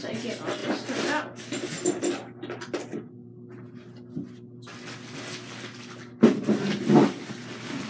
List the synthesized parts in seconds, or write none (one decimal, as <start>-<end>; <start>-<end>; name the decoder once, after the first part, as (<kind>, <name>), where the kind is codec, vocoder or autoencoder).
none